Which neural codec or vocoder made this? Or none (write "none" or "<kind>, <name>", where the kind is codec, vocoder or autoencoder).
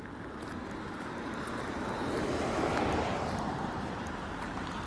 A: none